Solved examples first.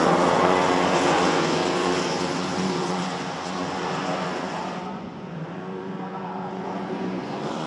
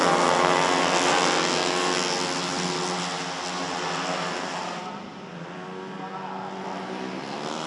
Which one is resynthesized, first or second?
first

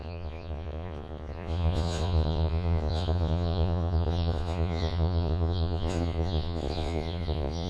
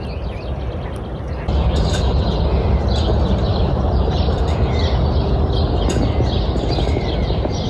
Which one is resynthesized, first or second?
first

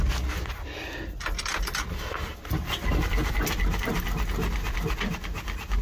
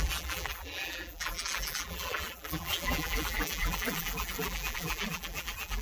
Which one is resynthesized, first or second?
second